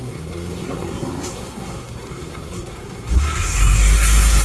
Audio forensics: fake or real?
fake